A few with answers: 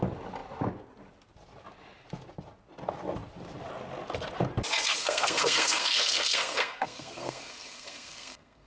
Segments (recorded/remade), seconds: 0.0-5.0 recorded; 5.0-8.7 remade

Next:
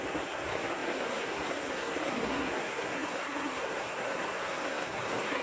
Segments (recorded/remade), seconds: 0.0-5.4 remade

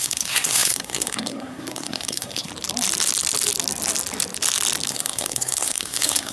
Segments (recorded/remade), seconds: 0.0-2.5 remade; 2.5-4.9 recorded; 4.9-6.3 remade

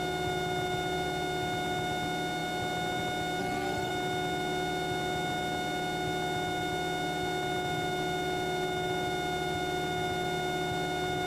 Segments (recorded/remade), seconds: 0.0-3.4 recorded; 3.4-3.9 remade; 3.9-11.3 recorded